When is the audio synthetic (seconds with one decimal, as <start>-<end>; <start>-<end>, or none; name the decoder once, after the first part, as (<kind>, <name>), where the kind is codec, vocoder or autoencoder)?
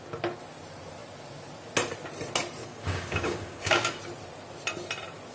2.6-4.0 (codec, DAC)